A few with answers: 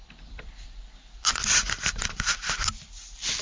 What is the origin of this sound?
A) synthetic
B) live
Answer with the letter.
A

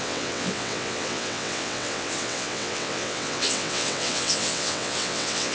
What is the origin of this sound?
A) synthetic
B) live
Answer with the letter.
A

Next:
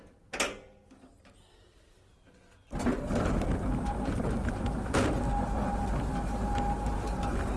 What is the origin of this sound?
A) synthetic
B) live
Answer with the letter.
B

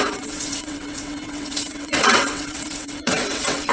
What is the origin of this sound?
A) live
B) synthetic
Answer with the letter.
B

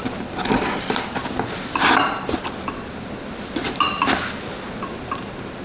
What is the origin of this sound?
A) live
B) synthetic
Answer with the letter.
A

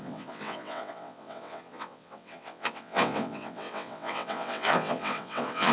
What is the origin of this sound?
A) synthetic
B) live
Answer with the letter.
A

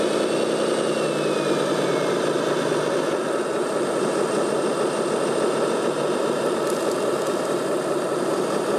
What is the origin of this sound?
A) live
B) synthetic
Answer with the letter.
A